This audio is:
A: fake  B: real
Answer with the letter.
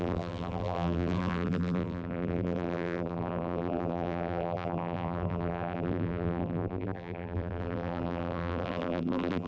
A